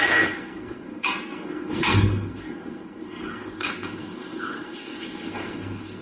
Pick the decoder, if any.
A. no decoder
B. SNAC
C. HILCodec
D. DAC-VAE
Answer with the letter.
B